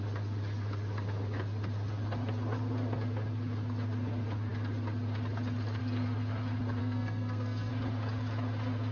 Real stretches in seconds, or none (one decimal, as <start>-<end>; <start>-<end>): 0.0-6.8; 7.7-8.9